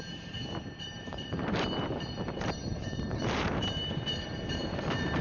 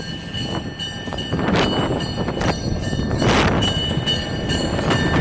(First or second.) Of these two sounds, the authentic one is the second